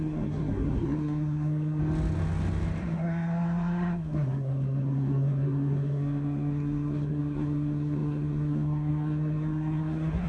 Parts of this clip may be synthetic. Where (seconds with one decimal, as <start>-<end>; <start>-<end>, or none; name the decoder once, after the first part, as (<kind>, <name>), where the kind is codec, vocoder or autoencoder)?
0.0-1.8 (codec, SNAC); 2.8-10.3